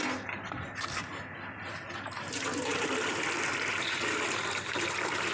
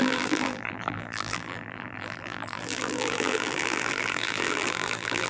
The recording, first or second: first